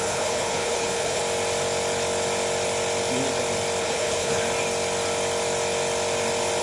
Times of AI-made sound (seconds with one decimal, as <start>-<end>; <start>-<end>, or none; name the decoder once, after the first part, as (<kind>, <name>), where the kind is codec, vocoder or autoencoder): 0.0-1.2 (codec, HILCodec); 3.8-4.4

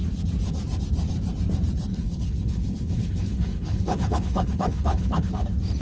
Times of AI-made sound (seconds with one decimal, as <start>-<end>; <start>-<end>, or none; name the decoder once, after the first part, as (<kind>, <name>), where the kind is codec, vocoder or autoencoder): 1.9-5.3 (codec, HILCodec)

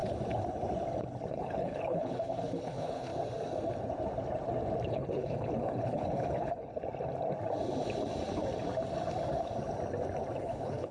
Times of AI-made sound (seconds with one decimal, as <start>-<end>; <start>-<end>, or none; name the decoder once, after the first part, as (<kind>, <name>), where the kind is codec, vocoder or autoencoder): 1.3-3.1 (codec, HILCodec); 4.9-6.7; 10.4-10.9

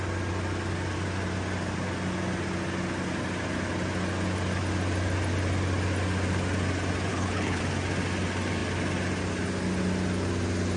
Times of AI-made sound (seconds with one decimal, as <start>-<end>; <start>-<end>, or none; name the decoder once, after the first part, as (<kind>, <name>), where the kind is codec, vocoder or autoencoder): 7.1-7.6 (codec, HILCodec)

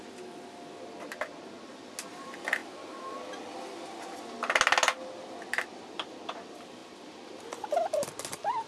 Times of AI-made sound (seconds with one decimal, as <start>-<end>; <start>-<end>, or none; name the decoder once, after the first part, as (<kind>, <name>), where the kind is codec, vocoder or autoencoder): none

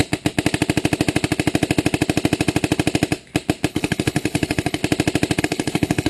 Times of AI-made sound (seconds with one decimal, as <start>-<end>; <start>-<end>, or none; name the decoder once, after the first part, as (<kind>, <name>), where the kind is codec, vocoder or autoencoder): 3.7-4.8 (codec, HILCodec); 5.4-6.1